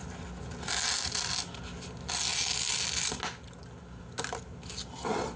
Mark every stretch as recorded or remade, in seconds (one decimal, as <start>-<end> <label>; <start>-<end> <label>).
0.0-5.4 recorded